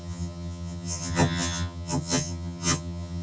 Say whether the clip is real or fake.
fake